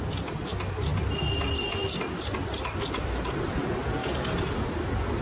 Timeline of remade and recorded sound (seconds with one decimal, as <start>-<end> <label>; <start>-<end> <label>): 0.0-5.2 recorded